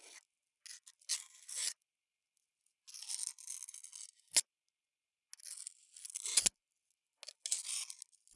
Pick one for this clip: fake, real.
real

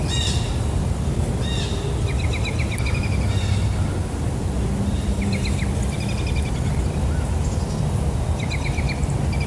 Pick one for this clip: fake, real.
real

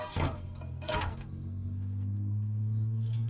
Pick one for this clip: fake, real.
fake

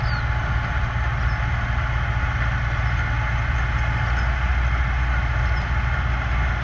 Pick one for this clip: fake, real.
real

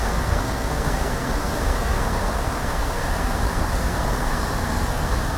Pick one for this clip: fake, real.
fake